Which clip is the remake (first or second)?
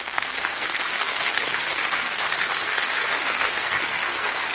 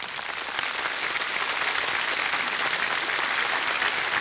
first